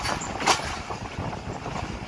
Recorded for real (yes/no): yes